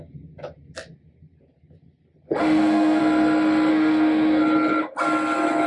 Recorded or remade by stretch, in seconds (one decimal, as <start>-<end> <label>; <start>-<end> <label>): 0.0-2.4 recorded; 2.4-3.0 remade; 3.0-3.7 recorded; 3.7-4.4 remade; 4.4-5.7 recorded